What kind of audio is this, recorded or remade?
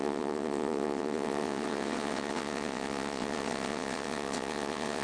remade